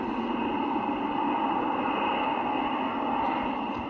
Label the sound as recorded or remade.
remade